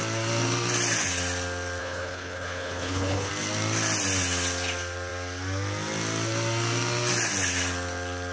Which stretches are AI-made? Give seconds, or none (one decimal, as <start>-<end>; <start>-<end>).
1.8-3.3